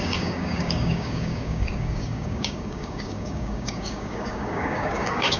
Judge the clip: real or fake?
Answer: fake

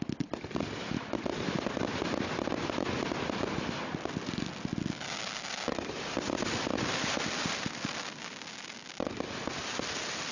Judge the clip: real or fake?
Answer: real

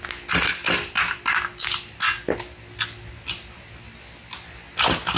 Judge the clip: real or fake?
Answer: real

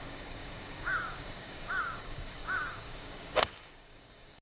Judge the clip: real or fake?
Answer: fake